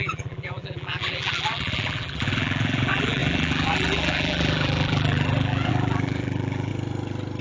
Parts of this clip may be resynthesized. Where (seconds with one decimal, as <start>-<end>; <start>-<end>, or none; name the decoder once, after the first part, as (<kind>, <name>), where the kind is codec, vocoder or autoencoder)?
0.0-6.7 (vocoder, BigVGAN v2)